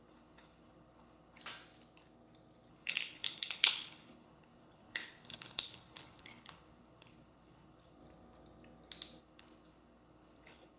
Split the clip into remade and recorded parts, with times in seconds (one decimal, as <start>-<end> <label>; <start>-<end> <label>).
0.0-1.4 remade; 1.4-2.7 recorded; 2.7-8.0 remade; 8.0-9.2 recorded; 9.2-10.8 remade

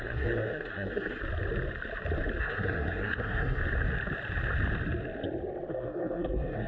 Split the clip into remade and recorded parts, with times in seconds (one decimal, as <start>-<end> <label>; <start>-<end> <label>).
0.0-1.2 remade; 1.2-2.4 recorded; 2.4-3.6 remade; 3.6-5.7 recorded; 5.7-6.7 remade

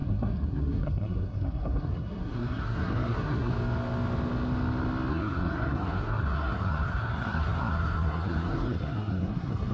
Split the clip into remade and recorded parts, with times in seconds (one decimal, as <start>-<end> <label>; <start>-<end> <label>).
0.0-3.5 remade; 3.5-5.1 recorded; 5.1-9.7 remade

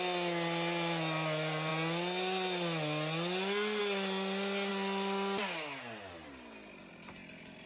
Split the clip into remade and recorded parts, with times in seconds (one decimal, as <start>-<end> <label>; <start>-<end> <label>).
0.0-7.7 recorded

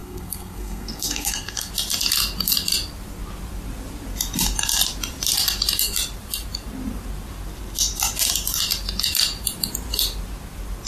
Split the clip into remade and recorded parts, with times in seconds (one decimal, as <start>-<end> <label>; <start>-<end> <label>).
0.0-1.7 remade; 1.7-10.9 recorded

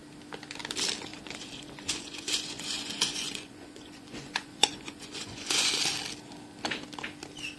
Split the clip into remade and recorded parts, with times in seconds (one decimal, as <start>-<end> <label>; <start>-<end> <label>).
0.0-1.1 recorded; 1.1-5.7 remade; 5.7-7.6 recorded

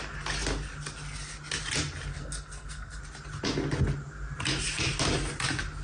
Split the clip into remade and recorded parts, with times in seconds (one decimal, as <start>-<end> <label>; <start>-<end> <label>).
0.0-2.1 recorded; 2.1-3.0 remade; 3.0-5.8 recorded